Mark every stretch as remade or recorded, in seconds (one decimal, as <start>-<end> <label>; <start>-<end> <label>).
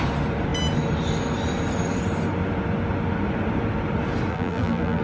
0.0-4.3 recorded; 4.3-5.0 remade